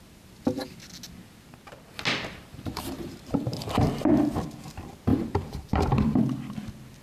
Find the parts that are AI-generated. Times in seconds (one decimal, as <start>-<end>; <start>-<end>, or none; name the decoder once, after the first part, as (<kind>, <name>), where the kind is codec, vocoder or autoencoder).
2.5-3.9 (vocoder, BigVGAN v2); 5.1-6.2